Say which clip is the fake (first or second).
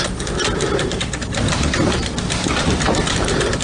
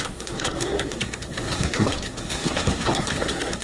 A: second